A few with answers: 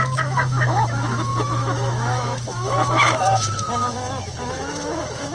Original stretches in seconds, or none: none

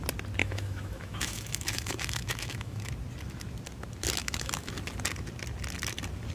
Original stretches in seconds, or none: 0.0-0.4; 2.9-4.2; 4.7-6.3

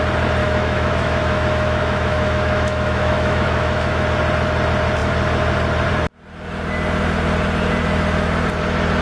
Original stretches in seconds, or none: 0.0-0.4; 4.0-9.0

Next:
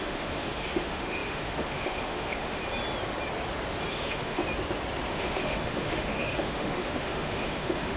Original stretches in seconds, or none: 2.6-3.9; 4.4-5.1

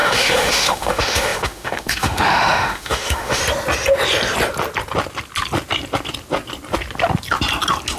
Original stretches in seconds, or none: 3.4-8.0

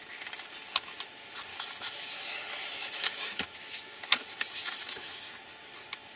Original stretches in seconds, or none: 0.0-1.5; 5.2-6.2

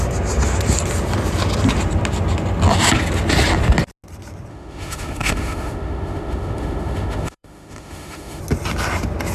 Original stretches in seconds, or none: 0.0-4.5; 8.4-9.3

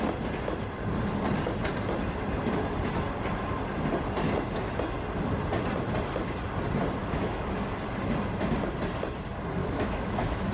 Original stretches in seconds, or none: 0.0-7.0; 7.5-9.6